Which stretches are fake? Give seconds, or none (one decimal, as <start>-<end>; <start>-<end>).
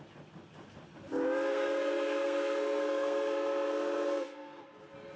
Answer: 1.5-4.6